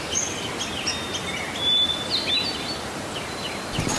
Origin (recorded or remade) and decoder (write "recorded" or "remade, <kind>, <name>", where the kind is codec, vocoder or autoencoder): recorded